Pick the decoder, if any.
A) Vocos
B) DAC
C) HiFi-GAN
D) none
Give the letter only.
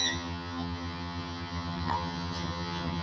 C